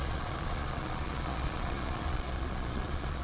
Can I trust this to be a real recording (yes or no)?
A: no